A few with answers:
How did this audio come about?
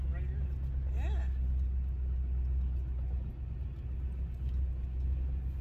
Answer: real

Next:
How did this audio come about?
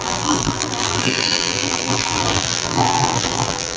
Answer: fake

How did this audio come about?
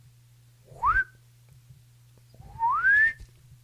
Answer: real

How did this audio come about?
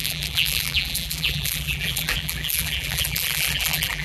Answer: fake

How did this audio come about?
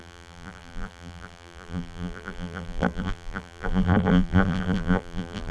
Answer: fake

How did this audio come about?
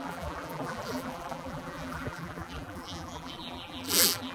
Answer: fake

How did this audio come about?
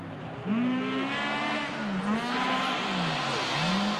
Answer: real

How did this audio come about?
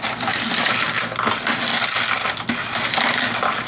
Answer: real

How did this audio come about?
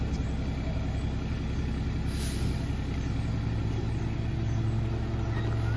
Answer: real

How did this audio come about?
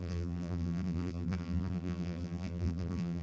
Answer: fake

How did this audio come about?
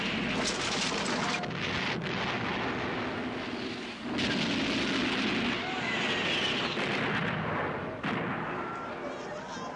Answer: real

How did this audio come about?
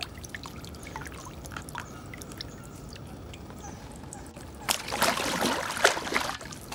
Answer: real